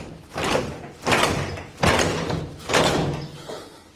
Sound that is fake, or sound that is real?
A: real